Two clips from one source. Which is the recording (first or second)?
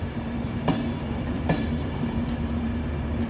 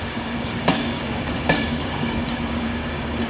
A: first